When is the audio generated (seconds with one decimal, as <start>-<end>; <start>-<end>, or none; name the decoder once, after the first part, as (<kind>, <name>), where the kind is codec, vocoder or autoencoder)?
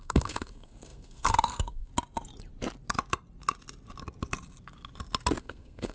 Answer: 0.0-1.9 (codec, SNAC); 5.4-5.9